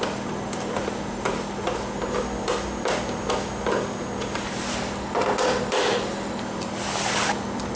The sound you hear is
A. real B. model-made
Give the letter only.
A